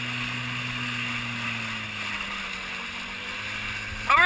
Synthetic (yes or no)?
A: no